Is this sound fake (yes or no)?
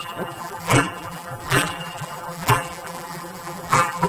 yes